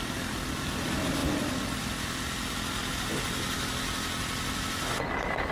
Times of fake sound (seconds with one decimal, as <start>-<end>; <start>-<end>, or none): none